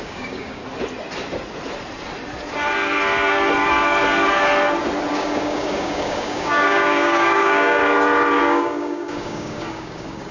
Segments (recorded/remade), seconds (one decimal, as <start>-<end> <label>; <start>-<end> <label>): 0.0-0.6 remade; 0.6-5.1 recorded; 5.1-7.8 remade; 7.8-8.4 recorded; 8.4-10.3 remade